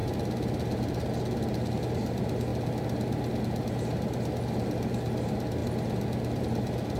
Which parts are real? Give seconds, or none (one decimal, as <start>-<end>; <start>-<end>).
0.0-7.0